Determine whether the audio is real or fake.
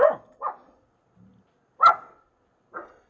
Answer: real